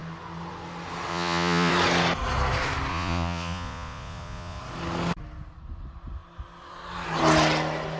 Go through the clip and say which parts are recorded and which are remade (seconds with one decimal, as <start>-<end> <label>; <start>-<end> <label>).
0.0-1.1 recorded; 1.1-1.7 remade; 1.7-2.9 recorded; 2.9-4.6 remade; 4.6-8.0 recorded